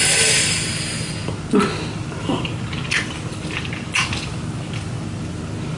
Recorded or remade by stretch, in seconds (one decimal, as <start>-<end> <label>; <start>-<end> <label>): 0.0-5.8 recorded